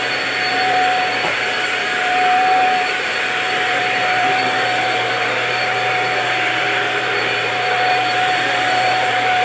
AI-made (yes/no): yes